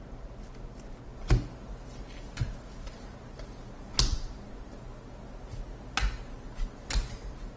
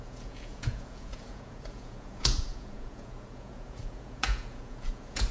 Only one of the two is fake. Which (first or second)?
second